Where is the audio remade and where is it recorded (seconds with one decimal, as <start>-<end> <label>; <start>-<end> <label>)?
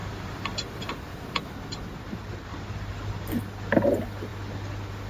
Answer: 0.0-0.9 remade; 0.9-2.5 recorded; 2.5-3.4 remade; 3.4-5.1 recorded